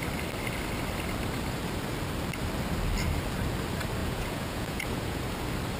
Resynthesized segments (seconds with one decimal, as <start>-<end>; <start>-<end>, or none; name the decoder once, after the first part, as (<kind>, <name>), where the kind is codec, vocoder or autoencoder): 4.0-5.2 (vocoder, Vocos)

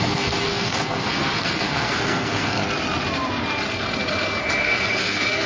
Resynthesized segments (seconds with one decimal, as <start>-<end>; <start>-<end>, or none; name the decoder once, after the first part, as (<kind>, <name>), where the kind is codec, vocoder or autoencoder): 0.0-2.6 (codec, SNAC); 4.4-5.5

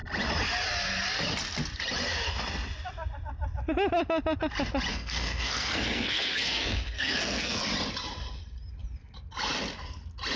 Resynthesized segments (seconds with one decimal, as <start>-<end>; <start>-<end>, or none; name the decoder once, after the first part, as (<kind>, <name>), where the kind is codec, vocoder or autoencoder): 4.9-7.6 (codec, SNAC)